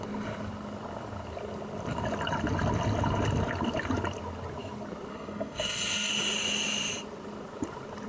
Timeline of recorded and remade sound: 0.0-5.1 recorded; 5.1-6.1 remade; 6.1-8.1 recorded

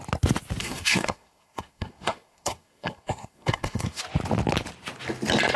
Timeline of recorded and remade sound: 0.0-0.6 recorded; 0.6-4.0 remade; 4.0-5.6 recorded

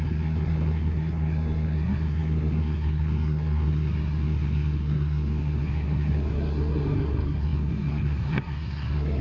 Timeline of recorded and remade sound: 0.0-9.2 remade

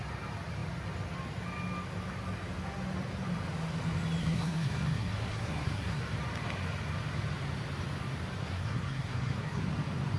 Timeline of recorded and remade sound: 0.0-4.2 recorded; 4.2-6.0 remade; 6.0-8.4 recorded; 8.4-9.6 remade; 9.6-10.2 recorded

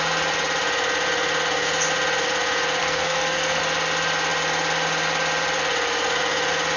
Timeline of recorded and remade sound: 0.0-2.8 recorded; 2.8-3.6 remade; 3.6-6.8 recorded

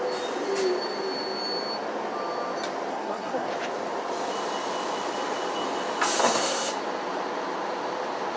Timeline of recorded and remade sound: 0.0-2.9 recorded; 2.9-3.5 remade; 3.5-6.2 recorded; 6.2-6.7 remade; 6.7-8.4 recorded

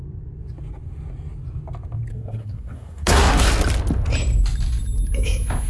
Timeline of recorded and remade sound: 0.0-2.1 recorded; 2.1-3.5 remade; 3.5-5.7 recorded

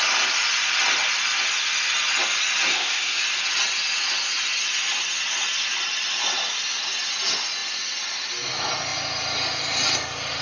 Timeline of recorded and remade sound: 0.0-2.7 recorded; 2.7-3.2 remade; 3.2-10.4 recorded